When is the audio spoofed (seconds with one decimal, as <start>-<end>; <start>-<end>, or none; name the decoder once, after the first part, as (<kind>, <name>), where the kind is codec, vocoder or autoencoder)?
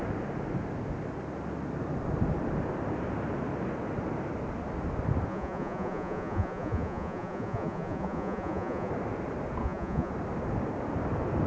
5.3-8.9 (vocoder, Vocos); 9.6-10.1